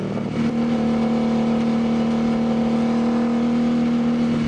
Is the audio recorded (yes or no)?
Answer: yes